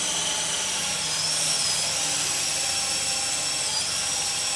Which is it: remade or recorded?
recorded